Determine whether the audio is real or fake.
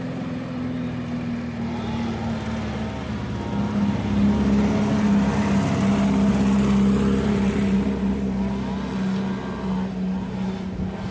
real